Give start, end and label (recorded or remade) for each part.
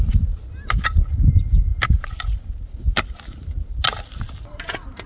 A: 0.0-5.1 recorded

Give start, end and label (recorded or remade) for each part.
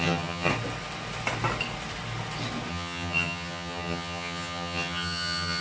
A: 0.0-0.5 remade; 0.5-2.7 recorded; 2.7-5.6 remade